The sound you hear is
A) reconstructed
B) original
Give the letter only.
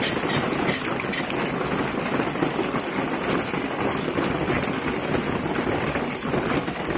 B